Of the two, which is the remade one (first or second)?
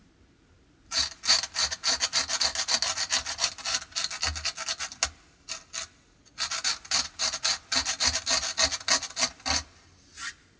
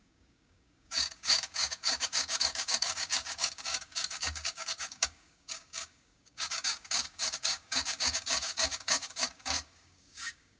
second